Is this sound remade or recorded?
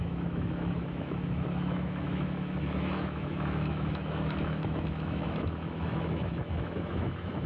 remade